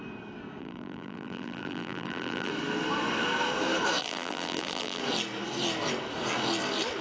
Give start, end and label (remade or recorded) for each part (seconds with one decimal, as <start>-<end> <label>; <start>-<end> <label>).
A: 0.0-0.6 recorded; 0.6-2.5 remade; 2.5-4.0 recorded; 4.0-5.0 remade; 5.0-7.0 recorded